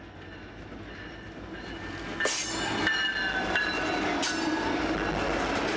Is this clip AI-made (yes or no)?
no